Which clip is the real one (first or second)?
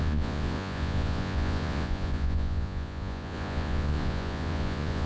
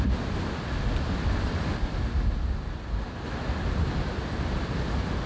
second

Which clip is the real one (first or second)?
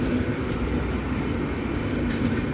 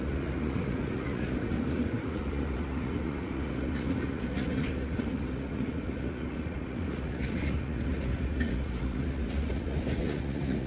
first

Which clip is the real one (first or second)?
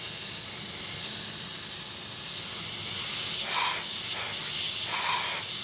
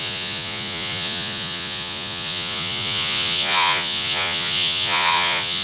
first